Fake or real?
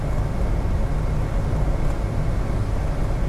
real